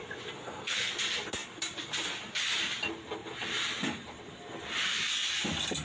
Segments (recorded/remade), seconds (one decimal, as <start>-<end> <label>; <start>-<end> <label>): 0.0-0.4 recorded; 0.4-0.9 remade; 0.9-5.8 recorded